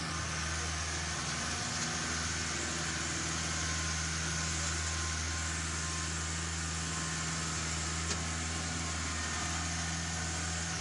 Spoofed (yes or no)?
no